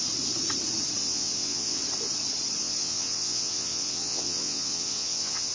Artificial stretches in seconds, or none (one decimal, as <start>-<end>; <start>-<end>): 1.0-1.8; 2.6-5.5